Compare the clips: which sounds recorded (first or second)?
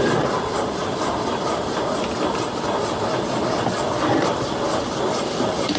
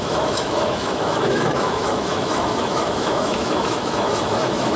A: first